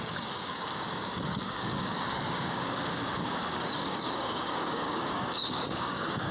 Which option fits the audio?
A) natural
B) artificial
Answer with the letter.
B